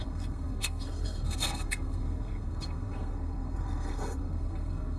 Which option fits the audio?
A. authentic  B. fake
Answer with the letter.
B